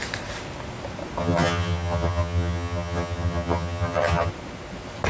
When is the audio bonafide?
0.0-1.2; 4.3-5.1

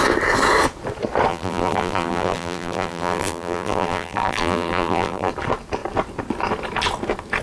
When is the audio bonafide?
0.0-1.3; 5.3-7.4

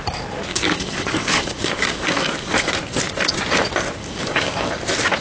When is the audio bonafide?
0.0-0.5; 2.7-4.0; 4.7-5.2

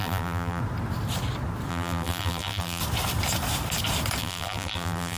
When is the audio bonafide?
0.6-1.7; 2.8-4.2

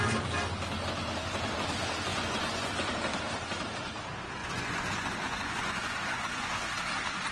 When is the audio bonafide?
0.0-2.1; 2.7-4.4; 6.7-7.3